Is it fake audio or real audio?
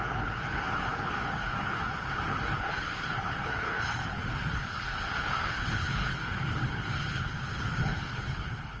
fake